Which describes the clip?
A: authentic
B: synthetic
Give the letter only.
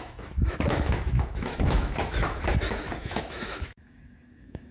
B